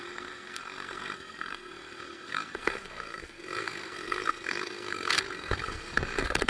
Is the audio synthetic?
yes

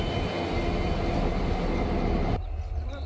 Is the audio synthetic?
no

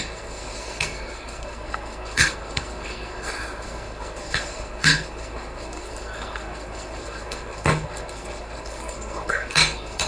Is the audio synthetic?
yes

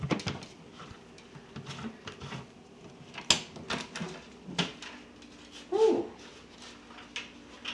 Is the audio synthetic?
no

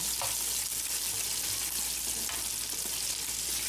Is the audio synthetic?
no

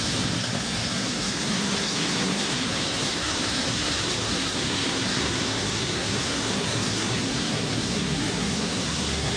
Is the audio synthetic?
yes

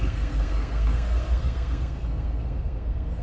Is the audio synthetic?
yes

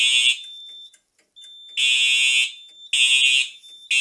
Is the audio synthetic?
no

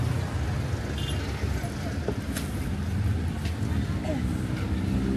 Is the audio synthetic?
no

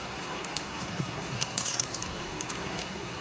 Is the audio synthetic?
yes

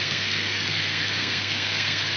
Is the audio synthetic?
yes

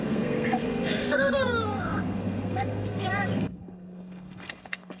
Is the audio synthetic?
yes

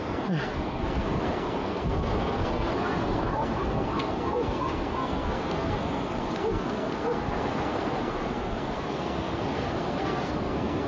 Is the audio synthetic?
yes